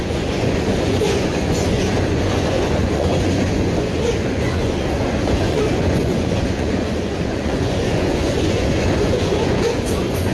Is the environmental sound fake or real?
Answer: fake